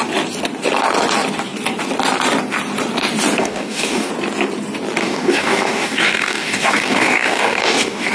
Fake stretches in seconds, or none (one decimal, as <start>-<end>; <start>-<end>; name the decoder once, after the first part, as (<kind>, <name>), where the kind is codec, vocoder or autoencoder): 3.4-4.1 (codec, DAC); 5.0-8.1